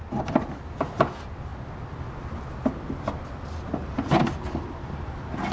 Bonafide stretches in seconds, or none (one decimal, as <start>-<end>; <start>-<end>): 0.0-5.5